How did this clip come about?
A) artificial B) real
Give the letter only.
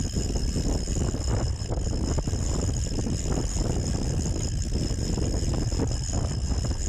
B